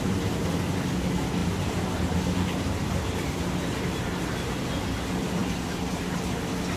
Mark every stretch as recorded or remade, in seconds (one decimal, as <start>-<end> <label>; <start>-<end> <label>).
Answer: 0.0-1.4 recorded; 1.4-3.8 remade; 3.8-5.4 recorded; 5.4-6.0 remade; 6.0-6.8 recorded